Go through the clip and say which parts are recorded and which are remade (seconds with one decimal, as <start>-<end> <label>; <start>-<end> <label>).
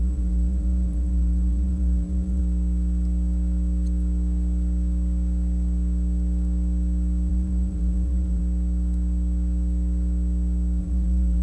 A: 0.0-2.4 remade; 2.4-7.3 recorded; 7.3-8.4 remade; 8.4-10.8 recorded; 10.8-11.4 remade